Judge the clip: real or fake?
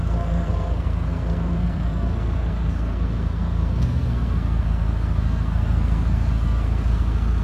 fake